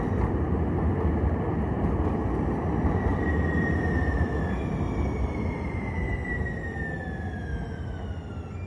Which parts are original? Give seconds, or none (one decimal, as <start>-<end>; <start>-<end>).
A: 0.0-3.1; 4.7-8.7